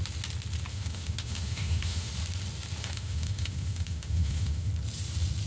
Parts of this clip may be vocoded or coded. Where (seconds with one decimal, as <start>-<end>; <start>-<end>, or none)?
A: 0.7-2.1; 2.8-4.7